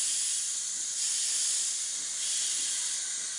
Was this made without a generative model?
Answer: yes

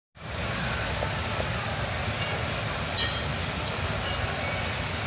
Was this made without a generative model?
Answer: yes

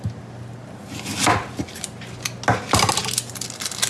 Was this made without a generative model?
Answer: yes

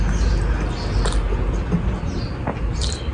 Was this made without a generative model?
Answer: yes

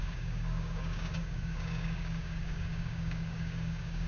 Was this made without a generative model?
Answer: no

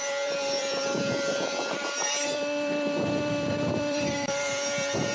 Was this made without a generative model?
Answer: no